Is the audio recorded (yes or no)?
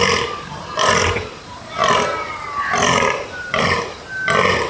yes